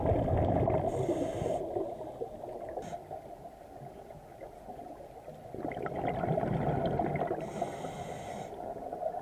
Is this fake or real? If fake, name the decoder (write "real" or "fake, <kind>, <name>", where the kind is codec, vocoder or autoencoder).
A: real